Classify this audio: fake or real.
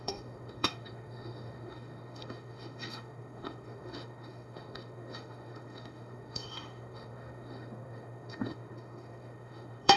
fake